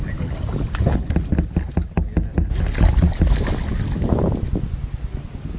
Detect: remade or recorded recorded